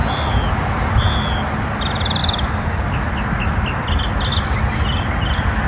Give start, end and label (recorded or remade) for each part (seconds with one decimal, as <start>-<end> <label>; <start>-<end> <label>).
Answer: 0.0-5.7 recorded